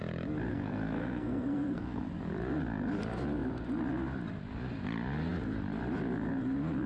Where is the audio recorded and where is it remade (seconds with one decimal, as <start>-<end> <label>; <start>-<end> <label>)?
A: 0.0-0.5 recorded; 0.5-2.0 remade; 2.0-6.9 recorded